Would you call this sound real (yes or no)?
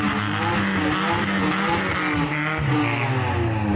yes